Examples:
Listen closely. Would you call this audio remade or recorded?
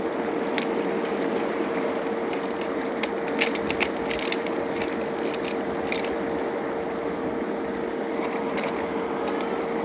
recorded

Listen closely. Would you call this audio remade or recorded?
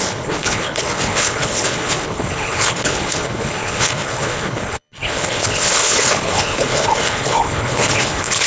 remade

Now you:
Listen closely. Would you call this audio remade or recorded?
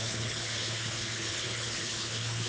remade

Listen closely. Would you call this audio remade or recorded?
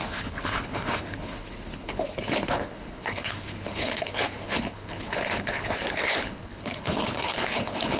remade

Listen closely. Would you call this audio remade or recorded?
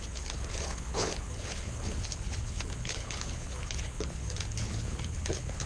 remade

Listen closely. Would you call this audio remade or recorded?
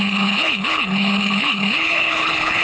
remade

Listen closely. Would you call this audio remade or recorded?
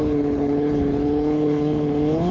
remade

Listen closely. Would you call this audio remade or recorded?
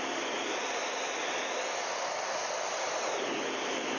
recorded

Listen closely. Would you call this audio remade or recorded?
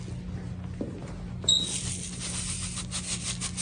recorded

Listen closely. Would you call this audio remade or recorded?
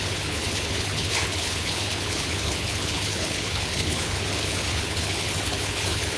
remade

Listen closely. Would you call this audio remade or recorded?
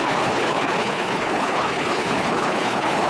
remade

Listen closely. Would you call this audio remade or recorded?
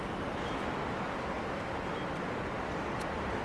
recorded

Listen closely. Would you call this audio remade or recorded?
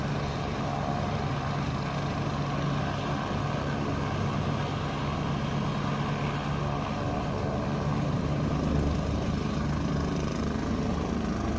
recorded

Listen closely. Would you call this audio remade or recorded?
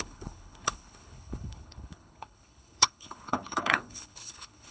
remade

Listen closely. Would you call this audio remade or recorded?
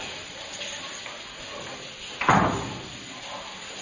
recorded